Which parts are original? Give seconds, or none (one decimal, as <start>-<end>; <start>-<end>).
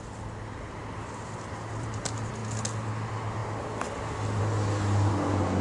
0.0-5.6